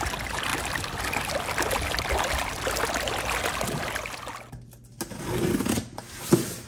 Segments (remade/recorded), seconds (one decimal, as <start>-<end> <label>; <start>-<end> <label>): 0.0-6.7 recorded